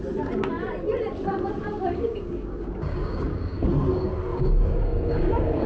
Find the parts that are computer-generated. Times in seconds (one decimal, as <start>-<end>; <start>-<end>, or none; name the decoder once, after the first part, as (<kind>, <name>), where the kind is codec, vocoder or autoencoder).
1.6-3.7 (codec, DAC); 4.3-5.7